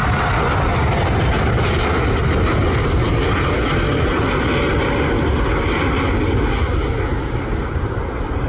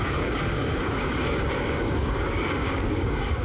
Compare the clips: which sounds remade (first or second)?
second